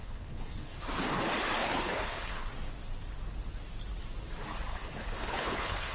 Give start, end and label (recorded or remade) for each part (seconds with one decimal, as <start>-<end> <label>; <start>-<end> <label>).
0.0-0.9 remade; 0.9-1.6 recorded; 1.6-2.5 remade; 2.5-4.7 recorded; 4.7-5.9 remade